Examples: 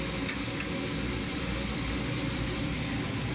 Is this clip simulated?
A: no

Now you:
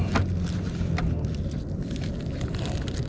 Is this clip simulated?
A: no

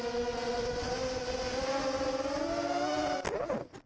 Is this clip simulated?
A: no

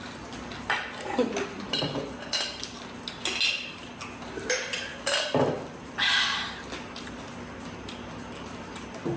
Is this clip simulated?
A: no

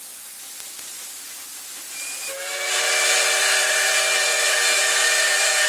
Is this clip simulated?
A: no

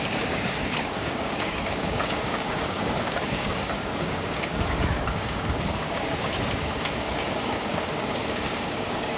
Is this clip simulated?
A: yes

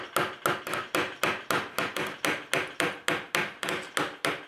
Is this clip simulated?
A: no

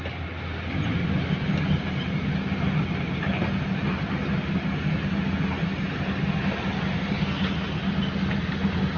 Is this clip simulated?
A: no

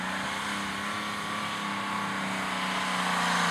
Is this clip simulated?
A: no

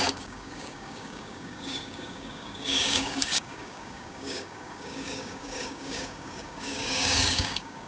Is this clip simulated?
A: yes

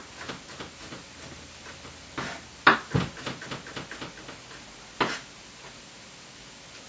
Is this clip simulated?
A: no